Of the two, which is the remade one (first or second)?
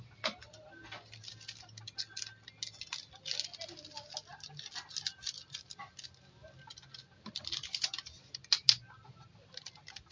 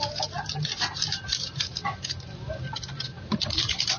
second